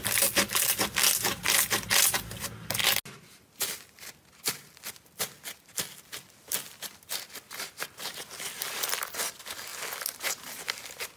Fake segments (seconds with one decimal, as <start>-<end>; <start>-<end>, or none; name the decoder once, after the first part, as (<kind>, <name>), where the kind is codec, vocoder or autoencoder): none